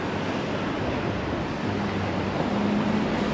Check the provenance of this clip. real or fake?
real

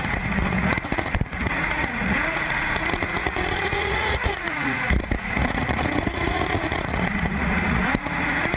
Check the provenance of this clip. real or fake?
fake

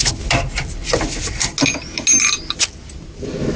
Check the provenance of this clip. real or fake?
real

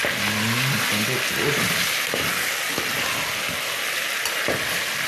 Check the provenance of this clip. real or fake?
real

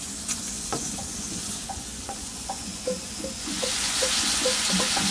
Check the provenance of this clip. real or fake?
fake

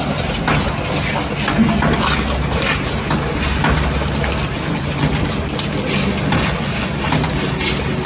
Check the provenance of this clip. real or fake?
real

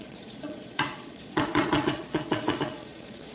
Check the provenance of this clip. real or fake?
fake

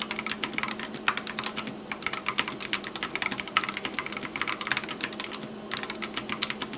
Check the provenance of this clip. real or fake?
real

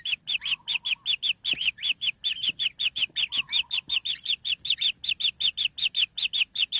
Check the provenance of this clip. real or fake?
real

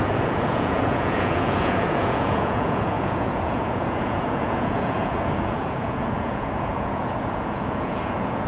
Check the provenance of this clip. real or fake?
fake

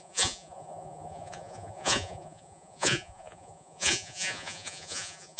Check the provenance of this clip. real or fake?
fake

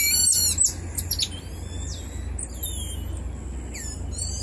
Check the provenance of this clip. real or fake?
real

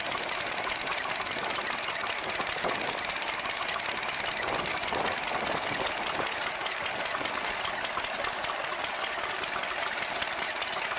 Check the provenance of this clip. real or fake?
real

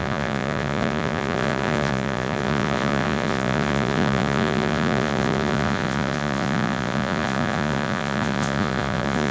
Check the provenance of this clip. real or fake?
fake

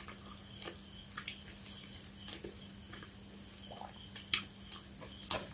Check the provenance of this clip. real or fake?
real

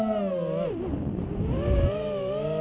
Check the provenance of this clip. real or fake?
real